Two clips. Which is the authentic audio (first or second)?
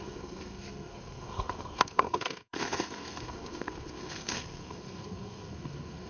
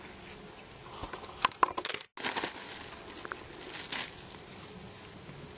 second